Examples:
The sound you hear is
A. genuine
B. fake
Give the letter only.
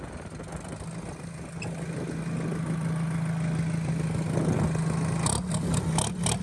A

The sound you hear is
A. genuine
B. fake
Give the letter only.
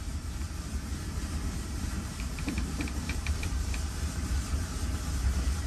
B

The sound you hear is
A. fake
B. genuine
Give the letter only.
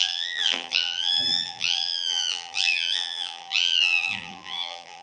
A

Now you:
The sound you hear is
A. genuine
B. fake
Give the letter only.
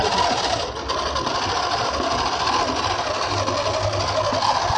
A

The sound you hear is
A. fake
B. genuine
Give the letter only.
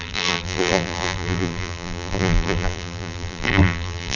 A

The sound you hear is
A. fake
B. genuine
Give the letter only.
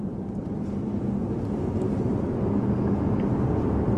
B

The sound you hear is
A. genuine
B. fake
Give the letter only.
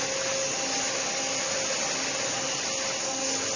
A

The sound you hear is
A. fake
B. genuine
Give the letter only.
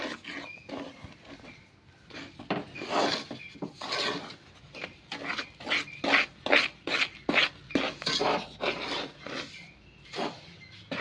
B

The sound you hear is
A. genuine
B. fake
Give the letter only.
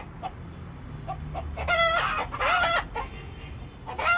A